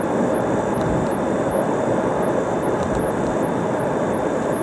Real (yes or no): no